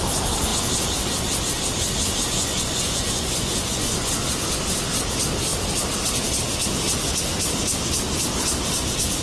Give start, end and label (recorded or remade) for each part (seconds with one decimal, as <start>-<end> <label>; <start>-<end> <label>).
0.0-2.2 recorded; 2.2-4.1 remade; 4.1-9.2 recorded